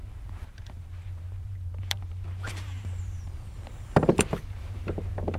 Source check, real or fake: fake